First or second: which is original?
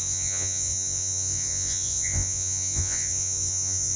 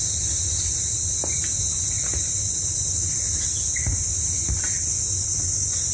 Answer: second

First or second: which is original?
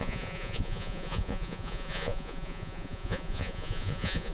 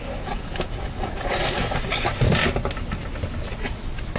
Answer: second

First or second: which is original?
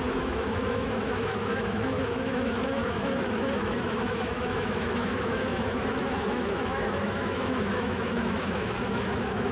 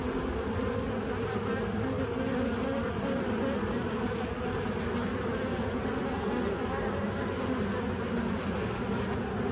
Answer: second